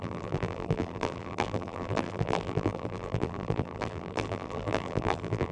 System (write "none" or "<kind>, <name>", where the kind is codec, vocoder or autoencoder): vocoder, BigVGAN v2